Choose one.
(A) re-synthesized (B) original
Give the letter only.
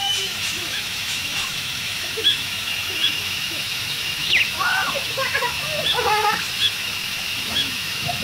A